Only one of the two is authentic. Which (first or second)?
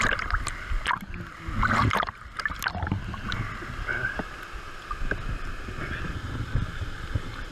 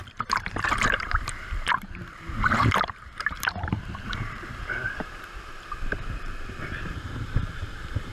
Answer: first